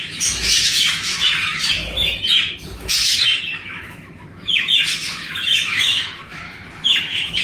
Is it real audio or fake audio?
fake